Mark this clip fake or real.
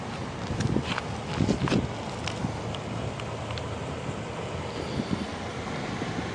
real